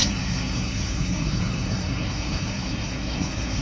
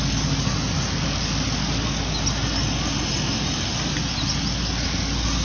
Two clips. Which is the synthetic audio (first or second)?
first